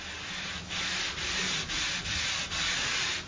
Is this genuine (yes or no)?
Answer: yes